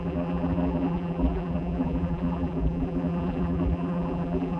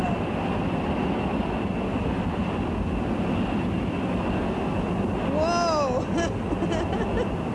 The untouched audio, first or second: second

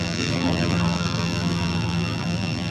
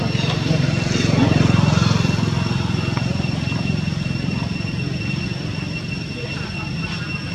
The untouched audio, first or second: second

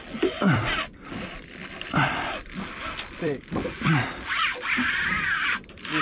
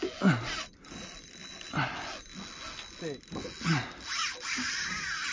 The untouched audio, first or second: second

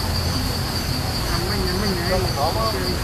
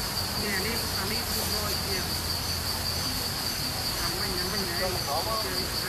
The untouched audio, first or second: first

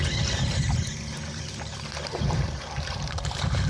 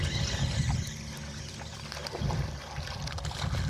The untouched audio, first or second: second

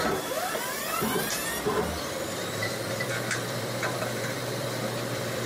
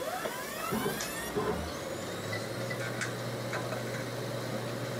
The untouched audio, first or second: second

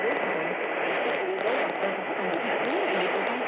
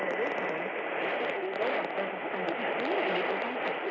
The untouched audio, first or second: first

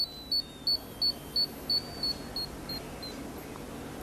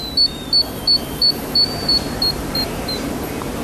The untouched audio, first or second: first